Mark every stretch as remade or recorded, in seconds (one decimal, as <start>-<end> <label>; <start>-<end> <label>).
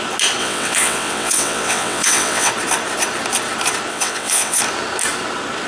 0.0-0.4 recorded; 0.4-2.5 remade; 2.5-3.9 recorded; 3.9-4.6 remade; 4.6-5.7 recorded